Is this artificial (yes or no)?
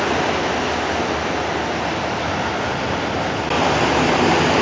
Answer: no